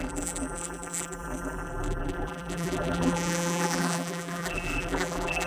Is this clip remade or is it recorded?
remade